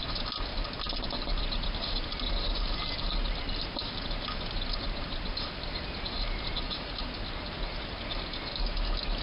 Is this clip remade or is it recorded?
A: recorded